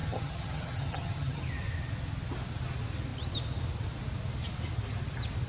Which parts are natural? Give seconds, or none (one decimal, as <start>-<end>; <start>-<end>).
1.4-5.5